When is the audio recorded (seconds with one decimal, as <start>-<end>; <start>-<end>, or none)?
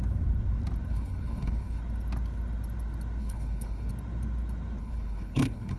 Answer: 0.0-0.9; 1.8-3.2; 3.9-4.8